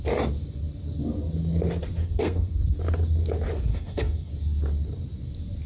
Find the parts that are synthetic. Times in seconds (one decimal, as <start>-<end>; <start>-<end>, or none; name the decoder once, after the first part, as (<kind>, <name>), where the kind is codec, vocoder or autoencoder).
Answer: 2.0-2.6 (codec, SNAC); 3.7-4.3